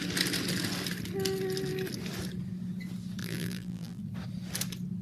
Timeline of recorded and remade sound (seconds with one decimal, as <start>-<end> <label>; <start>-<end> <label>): 0.0-3.2 recorded; 3.2-4.0 remade; 4.0-5.0 recorded